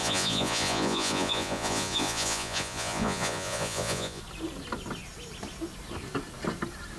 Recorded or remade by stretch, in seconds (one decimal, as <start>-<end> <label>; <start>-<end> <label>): 0.0-4.2 remade; 4.2-7.0 recorded